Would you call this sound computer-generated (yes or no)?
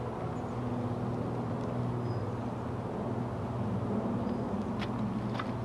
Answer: no